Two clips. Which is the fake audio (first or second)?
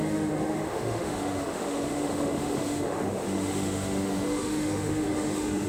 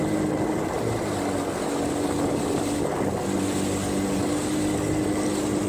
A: first